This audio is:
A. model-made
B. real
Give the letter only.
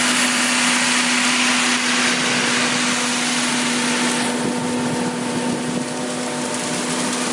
B